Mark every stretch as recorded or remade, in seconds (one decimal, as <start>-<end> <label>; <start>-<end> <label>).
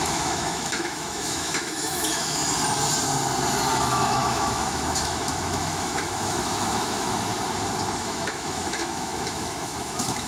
0.0-2.4 remade; 2.4-3.8 recorded; 3.8-7.3 remade; 7.3-8.0 recorded; 8.0-10.3 remade